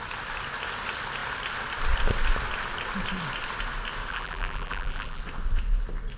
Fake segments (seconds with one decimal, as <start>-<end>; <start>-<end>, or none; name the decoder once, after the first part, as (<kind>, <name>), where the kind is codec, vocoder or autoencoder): 4.1-5.2 (vocoder, BigVGAN v2)